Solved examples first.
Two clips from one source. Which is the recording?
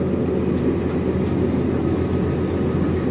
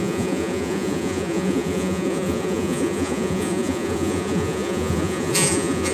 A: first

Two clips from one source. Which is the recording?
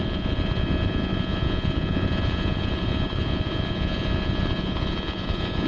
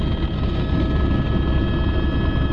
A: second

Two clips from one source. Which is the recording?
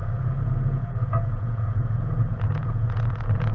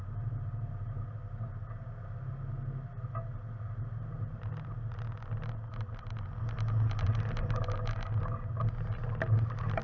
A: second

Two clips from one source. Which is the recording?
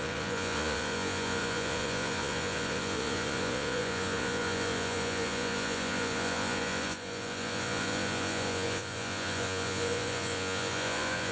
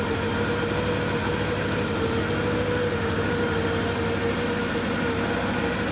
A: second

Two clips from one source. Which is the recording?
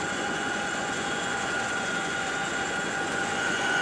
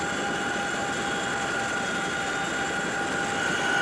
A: second